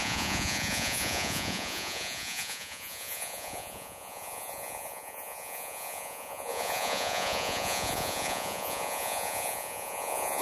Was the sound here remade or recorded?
remade